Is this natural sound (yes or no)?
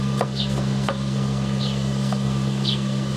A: no